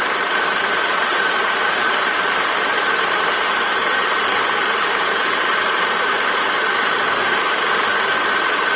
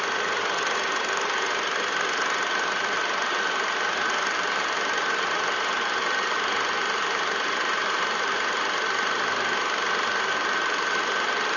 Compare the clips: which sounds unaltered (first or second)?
second